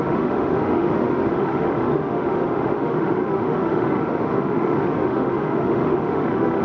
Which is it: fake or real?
fake